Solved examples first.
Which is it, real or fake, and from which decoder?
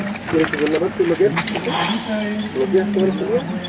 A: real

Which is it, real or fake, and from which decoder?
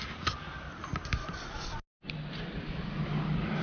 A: real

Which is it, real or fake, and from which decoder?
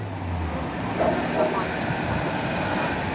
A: real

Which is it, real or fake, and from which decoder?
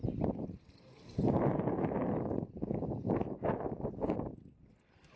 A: real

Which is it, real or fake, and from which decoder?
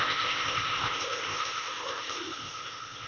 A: fake, codec, ZipCodec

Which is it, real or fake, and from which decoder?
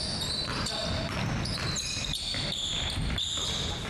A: real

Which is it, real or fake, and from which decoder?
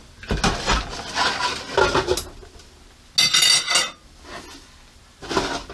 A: real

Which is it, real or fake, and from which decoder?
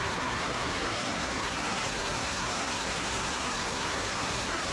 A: fake, codec, SNAC